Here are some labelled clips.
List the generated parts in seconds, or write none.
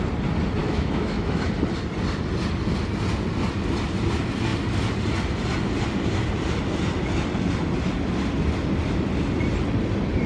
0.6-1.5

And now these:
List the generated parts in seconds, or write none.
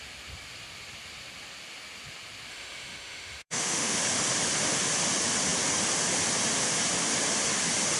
2.5-4.0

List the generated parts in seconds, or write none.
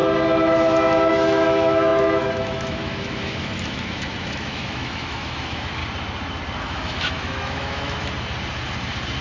1.1-5.8; 6.6-8.0